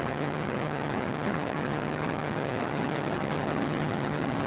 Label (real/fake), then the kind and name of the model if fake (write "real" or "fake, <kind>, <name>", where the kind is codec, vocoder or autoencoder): fake, vocoder, HiFi-GAN